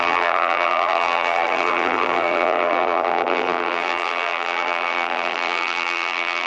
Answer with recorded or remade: remade